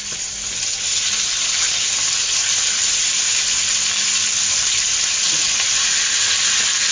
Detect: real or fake fake